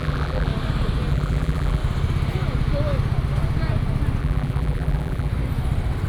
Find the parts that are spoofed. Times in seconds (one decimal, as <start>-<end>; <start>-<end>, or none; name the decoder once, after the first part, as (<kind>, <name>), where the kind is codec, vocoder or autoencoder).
0.0-0.5 (vocoder, BigVGAN v2); 1.1-1.8; 4.2-5.3